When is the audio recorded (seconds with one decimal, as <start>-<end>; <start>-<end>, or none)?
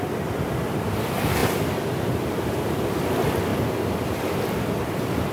0.0-5.3